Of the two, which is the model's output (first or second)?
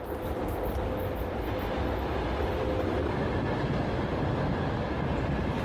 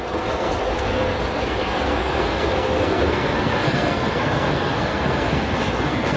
second